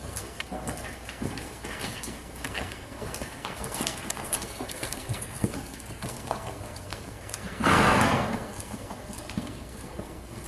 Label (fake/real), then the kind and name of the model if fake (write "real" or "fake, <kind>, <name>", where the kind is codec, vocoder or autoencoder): fake, codec, SNAC